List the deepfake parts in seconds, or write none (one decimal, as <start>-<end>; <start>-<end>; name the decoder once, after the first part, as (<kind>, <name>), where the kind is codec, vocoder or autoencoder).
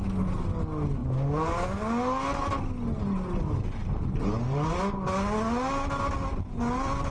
none